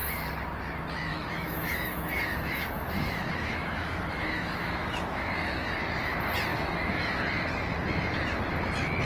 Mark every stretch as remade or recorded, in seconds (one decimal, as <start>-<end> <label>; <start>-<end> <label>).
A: 0.0-1.1 recorded; 1.1-5.8 remade; 5.8-6.5 recorded; 6.5-7.2 remade; 7.2-9.1 recorded

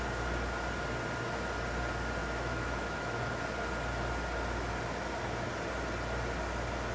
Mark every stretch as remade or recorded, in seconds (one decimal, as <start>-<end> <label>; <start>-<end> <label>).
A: 0.0-2.2 recorded; 2.2-3.4 remade; 3.4-6.9 recorded

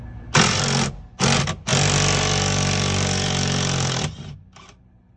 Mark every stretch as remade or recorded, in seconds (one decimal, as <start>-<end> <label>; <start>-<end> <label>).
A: 0.0-5.2 recorded

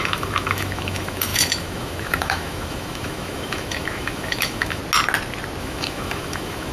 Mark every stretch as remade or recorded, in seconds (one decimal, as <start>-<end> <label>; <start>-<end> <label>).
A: 0.0-4.8 remade; 4.8-5.6 recorded; 5.6-6.7 remade

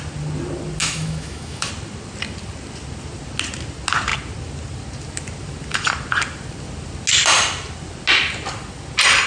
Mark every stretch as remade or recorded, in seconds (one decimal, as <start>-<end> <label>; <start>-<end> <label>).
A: 0.0-0.8 recorded; 0.8-1.7 remade; 1.7-9.3 recorded